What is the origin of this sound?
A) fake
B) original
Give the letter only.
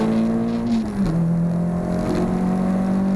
B